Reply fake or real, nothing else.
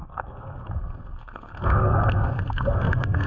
fake